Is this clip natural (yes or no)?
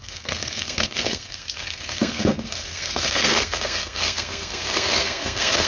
no